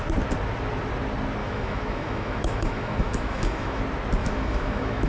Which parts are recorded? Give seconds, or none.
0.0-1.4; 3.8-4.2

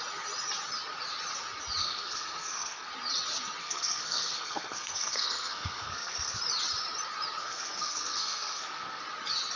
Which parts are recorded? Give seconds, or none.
0.0-1.8; 2.9-3.6; 6.4-7.4; 9.0-9.6

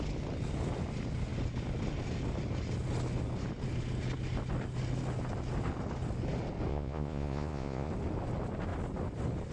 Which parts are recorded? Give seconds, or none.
0.0-6.7; 7.9-9.5